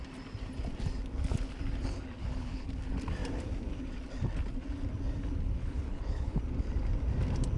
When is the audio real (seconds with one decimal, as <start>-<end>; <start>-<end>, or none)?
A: 0.0-2.2; 2.7-5.6; 6.4-7.6